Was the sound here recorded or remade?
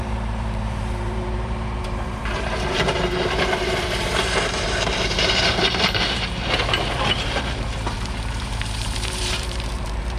remade